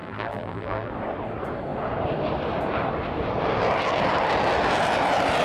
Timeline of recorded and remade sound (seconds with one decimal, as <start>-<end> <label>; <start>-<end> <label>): 0.0-0.9 remade; 0.9-5.4 recorded